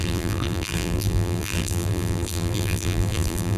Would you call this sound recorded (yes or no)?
no